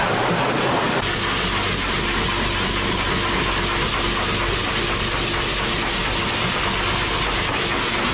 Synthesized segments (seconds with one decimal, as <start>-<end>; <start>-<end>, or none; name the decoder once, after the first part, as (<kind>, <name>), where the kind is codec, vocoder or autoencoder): none

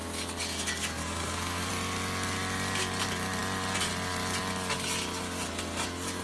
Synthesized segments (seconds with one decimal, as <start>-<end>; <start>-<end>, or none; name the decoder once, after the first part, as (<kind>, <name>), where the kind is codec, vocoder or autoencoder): 1.0-1.7 (codec, SNAC)

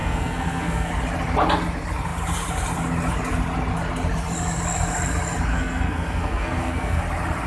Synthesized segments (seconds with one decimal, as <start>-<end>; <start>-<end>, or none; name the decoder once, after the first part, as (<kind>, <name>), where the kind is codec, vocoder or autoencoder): 0.0-0.9 (codec, SNAC); 5.5-7.0

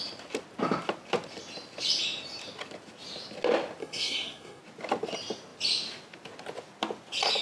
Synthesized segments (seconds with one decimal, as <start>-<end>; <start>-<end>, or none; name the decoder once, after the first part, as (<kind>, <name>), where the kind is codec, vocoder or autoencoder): 3.8-4.6 (codec, SNAC)

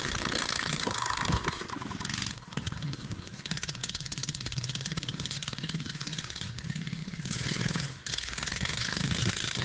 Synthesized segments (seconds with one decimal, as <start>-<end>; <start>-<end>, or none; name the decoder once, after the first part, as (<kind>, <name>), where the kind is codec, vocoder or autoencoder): 0.0-1.7 (codec, SNAC); 2.3-9.6

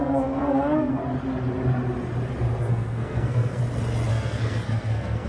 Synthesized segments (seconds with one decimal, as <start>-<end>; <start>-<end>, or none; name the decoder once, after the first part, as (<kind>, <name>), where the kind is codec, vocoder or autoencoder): 0.0-1.0 (codec, SNAC); 2.6-3.6; 4.1-5.3